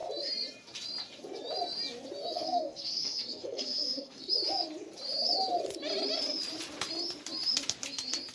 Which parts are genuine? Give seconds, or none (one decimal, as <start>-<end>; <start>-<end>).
0.0-2.2; 4.3-8.3